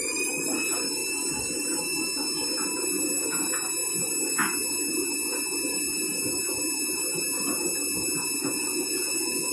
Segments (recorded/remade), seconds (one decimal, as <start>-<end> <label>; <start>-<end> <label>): 0.0-8.4 recorded; 8.4-9.5 remade

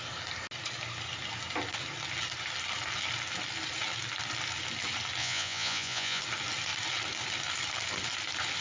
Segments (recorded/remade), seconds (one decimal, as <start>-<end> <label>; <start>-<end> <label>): 0.0-5.2 recorded; 5.2-6.2 remade; 6.2-8.6 recorded